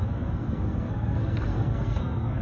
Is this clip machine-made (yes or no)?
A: yes